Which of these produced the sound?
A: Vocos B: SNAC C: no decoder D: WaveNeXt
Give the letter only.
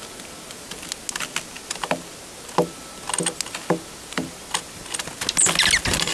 C